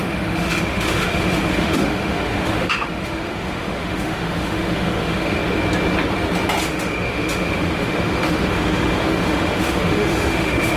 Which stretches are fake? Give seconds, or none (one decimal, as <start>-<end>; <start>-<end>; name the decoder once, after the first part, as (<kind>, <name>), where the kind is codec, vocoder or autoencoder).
0.0-5.4 (autoencoder, DAC-VAE); 6.6-10.8